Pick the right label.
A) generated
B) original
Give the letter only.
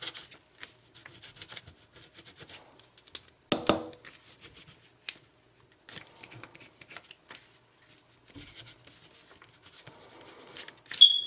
B